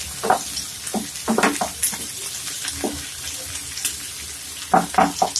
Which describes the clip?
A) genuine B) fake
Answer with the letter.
A